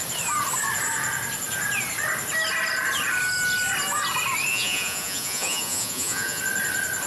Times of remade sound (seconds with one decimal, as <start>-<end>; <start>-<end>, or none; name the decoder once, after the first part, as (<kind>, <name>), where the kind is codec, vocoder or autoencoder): 4.5-6.4 (vocoder, Vocos)